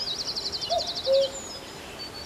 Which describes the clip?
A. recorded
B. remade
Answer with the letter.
A